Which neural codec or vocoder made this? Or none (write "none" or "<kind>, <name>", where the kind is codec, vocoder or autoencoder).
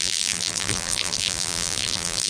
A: vocoder, BigVGAN v2